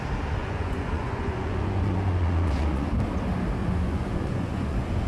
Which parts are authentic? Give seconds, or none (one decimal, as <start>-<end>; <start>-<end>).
0.0-0.4; 2.9-3.6